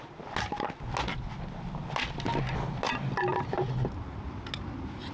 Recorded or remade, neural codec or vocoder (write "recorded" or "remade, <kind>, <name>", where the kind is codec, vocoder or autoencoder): recorded